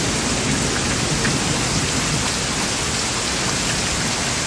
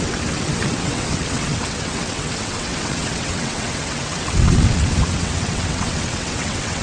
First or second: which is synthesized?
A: second